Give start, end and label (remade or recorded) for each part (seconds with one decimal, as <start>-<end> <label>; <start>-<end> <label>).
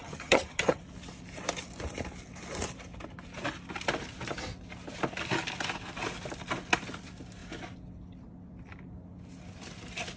0.0-0.8 remade; 0.8-10.2 recorded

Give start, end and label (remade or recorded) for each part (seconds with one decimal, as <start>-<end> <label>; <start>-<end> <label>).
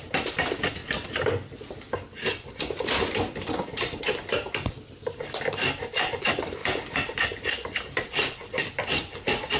0.0-0.8 remade; 0.8-5.4 recorded; 5.4-6.6 remade; 6.6-8.0 recorded; 8.0-9.6 remade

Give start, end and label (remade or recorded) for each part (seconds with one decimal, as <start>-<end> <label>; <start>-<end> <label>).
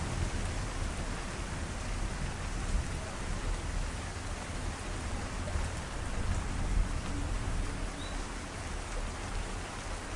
0.0-6.7 recorded; 6.7-7.4 remade; 7.4-10.2 recorded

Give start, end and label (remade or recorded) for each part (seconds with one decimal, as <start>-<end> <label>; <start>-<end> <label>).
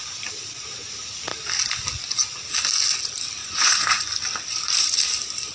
0.0-3.4 recorded; 3.4-4.0 remade; 4.0-5.5 recorded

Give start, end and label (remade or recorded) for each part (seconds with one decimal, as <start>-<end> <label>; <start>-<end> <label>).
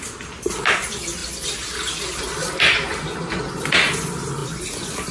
0.0-5.1 recorded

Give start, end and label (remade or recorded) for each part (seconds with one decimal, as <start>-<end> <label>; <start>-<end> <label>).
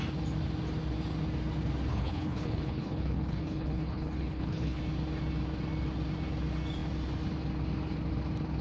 0.0-1.9 recorded; 1.9-4.8 remade; 4.8-8.6 recorded